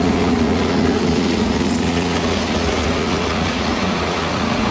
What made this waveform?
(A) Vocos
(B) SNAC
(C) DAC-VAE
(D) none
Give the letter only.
A